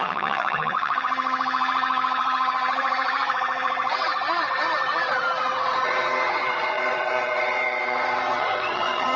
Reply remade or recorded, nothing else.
remade